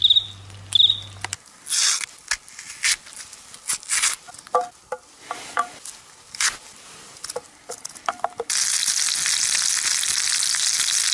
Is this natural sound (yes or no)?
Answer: yes